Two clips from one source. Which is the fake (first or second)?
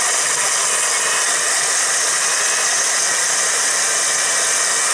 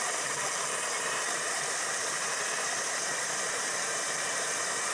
second